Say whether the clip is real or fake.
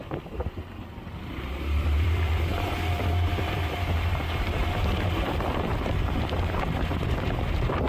fake